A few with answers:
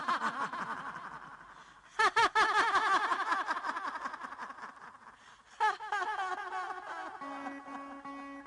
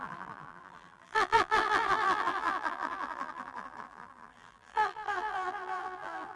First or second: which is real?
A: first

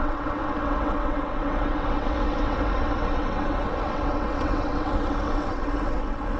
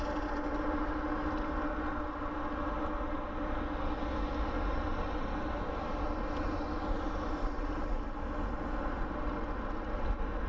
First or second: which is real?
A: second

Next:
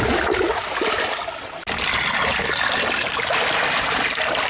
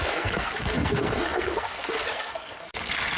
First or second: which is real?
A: first